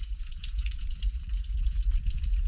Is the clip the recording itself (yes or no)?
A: no